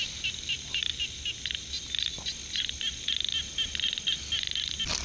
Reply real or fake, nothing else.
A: real